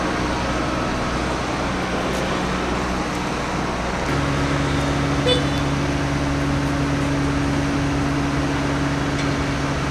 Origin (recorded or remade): recorded